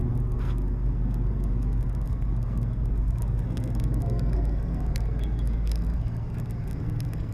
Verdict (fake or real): fake